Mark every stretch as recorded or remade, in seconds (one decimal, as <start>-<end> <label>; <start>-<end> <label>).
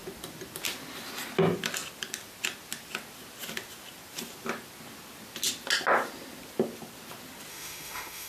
0.0-7.5 recorded; 7.5-8.3 remade